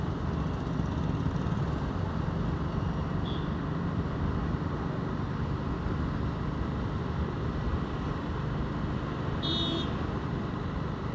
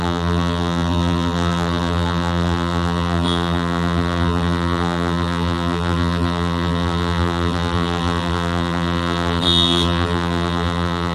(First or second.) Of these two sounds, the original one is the first